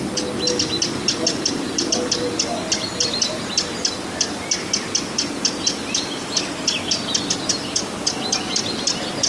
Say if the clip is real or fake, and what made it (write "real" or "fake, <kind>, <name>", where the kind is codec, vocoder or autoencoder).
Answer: real